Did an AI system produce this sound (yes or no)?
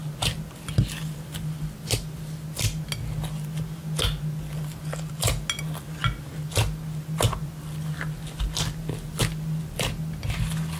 no